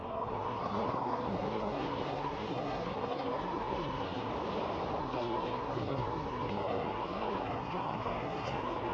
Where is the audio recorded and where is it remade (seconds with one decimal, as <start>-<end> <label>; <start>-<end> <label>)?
0.0-4.3 remade; 4.3-5.0 recorded; 5.0-8.9 remade